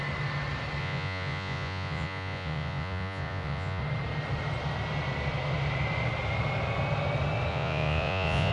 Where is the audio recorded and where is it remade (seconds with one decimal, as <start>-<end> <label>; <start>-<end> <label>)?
0.0-0.8 recorded; 0.8-3.8 remade; 3.8-7.5 recorded; 7.5-8.5 remade